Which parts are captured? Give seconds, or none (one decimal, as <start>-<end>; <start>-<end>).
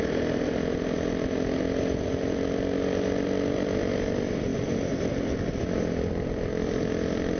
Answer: 0.0-7.4